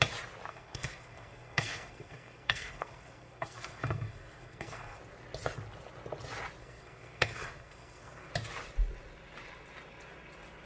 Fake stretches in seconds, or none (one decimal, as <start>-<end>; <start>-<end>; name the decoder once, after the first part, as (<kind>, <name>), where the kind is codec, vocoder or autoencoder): 0.5-5.0 (codec, SNAC); 6.6-8.3